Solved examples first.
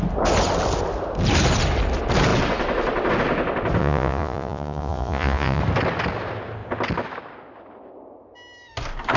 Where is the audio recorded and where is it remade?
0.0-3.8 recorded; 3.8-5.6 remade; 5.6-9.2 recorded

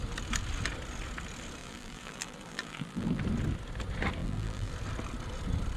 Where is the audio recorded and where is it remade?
0.0-1.6 recorded; 1.6-3.2 remade; 3.2-4.2 recorded; 4.2-4.7 remade; 4.7-5.8 recorded

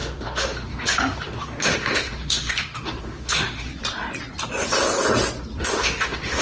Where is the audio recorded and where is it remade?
0.0-3.7 remade; 3.7-5.6 recorded; 5.6-6.4 remade

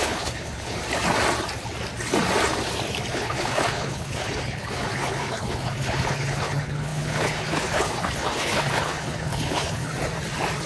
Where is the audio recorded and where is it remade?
0.0-0.8 remade; 0.8-3.1 recorded; 3.1-9.9 remade; 9.9-10.7 recorded

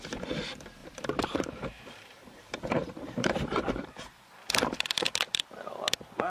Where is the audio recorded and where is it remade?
0.0-0.8 recorded; 0.8-4.5 remade; 4.5-6.3 recorded